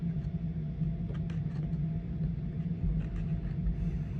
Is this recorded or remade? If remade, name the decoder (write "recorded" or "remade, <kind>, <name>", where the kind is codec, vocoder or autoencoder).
recorded